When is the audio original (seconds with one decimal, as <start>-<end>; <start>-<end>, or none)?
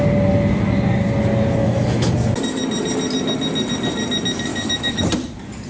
0.0-1.6; 2.1-4.5; 5.1-5.7